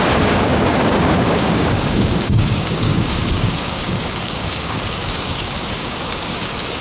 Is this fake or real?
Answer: fake